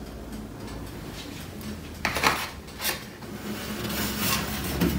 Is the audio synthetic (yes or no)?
no